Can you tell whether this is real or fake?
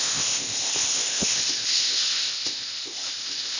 fake